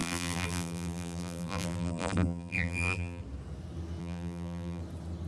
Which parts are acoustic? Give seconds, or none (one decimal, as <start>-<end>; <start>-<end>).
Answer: 3.2-4.0; 4.8-5.3

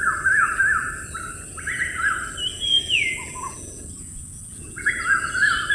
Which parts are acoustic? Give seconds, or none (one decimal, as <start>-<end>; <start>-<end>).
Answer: 0.0-2.5; 4.9-5.7

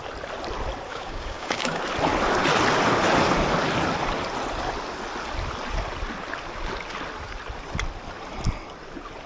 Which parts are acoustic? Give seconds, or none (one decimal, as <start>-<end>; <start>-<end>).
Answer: 0.0-0.9; 1.8-9.3

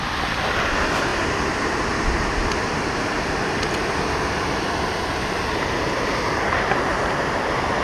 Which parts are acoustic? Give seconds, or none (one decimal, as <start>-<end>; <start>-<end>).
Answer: 0.0-7.8

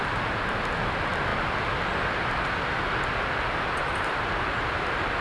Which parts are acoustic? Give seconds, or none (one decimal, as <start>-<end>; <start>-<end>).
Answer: 0.0-5.2